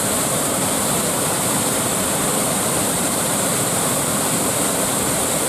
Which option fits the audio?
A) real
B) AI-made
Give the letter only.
B